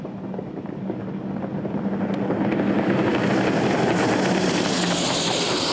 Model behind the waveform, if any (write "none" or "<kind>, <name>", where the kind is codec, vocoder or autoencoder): none